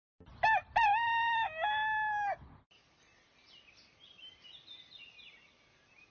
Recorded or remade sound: recorded